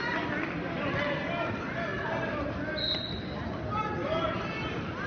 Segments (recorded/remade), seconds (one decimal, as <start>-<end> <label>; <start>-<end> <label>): 0.0-5.1 recorded